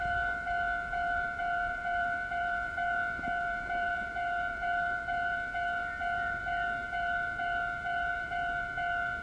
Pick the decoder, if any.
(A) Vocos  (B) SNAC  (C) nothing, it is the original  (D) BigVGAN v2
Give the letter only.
A